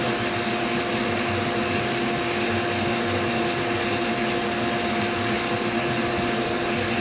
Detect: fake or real real